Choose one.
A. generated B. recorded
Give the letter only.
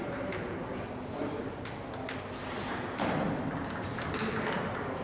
B